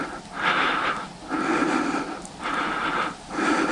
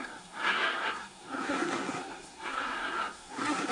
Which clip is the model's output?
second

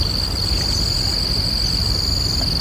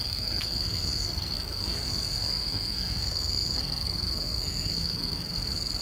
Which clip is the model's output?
second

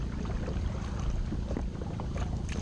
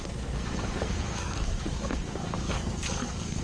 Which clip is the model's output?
second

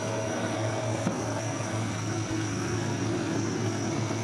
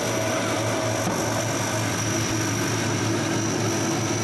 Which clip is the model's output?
first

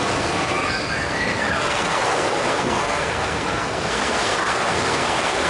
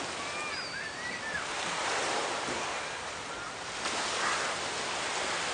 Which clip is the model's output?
first